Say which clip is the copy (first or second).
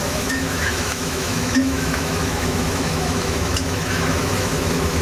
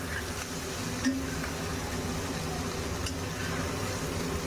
first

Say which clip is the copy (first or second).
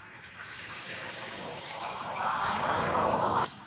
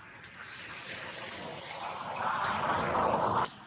first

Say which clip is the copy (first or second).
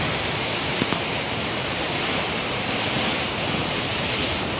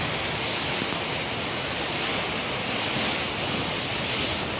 first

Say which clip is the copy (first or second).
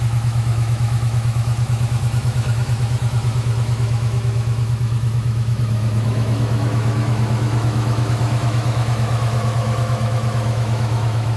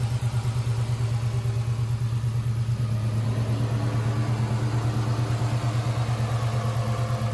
first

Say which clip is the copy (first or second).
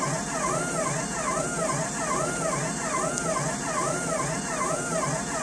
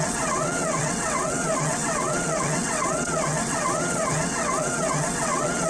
second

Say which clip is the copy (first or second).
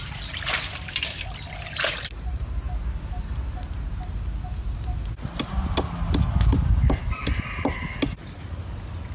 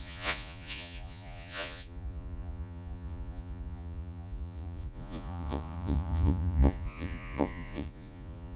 second